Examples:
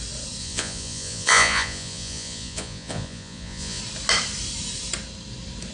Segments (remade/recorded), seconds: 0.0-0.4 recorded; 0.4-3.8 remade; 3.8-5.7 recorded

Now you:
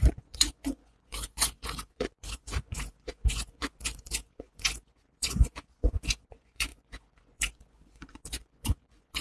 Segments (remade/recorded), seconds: 0.0-9.2 remade

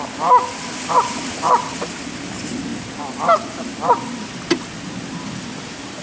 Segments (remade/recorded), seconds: 0.0-6.0 recorded

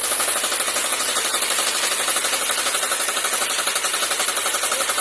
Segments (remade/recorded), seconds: 0.0-5.0 recorded

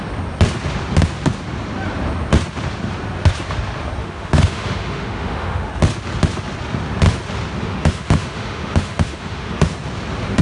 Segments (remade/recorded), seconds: 0.0-4.0 recorded; 4.0-5.7 remade; 5.7-7.6 recorded; 7.6-9.7 remade; 9.7-10.4 recorded

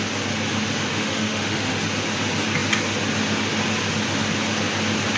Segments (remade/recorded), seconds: 0.0-0.9 recorded; 0.9-1.8 remade; 1.8-5.2 recorded